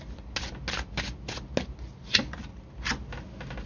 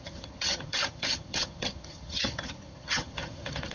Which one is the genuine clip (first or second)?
first